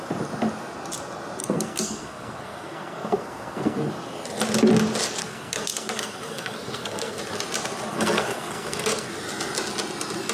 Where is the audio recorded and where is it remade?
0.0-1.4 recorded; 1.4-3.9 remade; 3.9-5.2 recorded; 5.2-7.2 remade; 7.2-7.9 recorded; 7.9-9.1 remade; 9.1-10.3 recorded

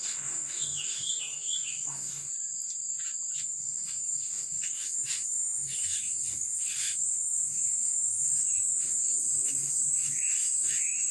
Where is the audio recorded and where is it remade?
0.0-2.3 remade; 2.3-3.4 recorded; 3.4-11.1 remade

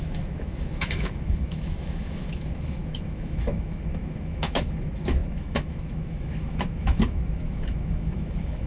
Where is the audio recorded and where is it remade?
0.0-8.7 remade

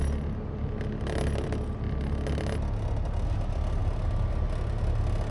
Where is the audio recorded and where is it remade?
0.0-5.3 recorded